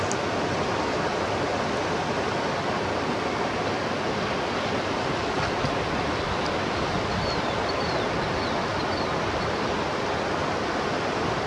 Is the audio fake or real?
real